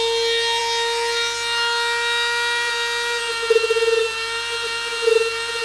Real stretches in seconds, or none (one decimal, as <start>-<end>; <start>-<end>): 0.0-5.6